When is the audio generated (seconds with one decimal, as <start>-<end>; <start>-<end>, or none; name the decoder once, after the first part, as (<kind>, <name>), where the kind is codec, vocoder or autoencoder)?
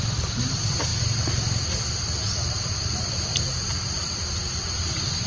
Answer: 0.0-0.9 (vocoder, BigVGAN v2); 1.6-3.3; 4.4-5.3